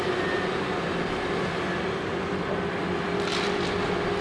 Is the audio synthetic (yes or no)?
no